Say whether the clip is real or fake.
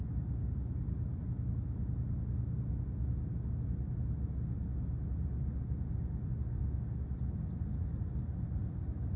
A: real